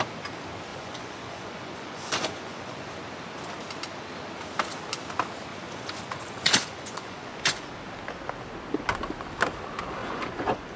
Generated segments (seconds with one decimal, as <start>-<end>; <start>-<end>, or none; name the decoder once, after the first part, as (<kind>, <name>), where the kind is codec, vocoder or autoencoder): 0.7-2.9 (vocoder, Vocos); 5.5-7.7; 10.0-10.8